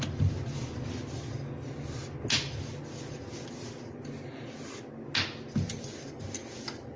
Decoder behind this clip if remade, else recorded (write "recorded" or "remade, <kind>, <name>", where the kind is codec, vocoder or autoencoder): recorded